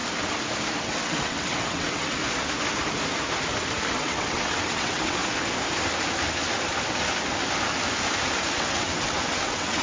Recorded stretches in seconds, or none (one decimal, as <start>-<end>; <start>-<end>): 0.0-0.8; 2.2-3.9; 5.2-8.5